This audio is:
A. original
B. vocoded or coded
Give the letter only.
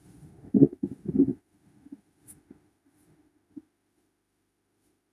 B